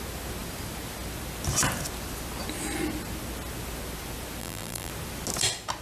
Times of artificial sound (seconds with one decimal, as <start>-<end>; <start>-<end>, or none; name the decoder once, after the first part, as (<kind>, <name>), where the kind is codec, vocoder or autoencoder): 4.4-4.9 (vocoder, BigVGAN v2)